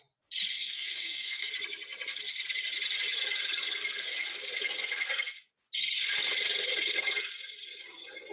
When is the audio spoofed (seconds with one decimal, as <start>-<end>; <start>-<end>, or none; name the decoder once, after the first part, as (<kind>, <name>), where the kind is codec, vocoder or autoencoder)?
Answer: 0.5-1.5 (codec, DAC)